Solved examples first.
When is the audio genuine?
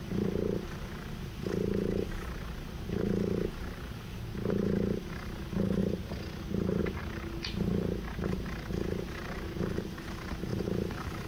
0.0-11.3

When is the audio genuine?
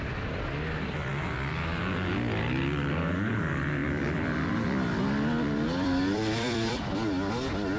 0.0-3.8; 7.3-7.8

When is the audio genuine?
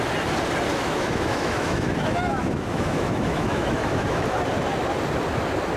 0.0-0.7; 4.2-5.8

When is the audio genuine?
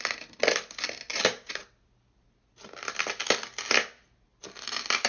0.0-1.1; 1.6-4.3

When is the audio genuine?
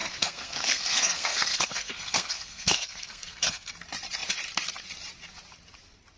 3.7-6.2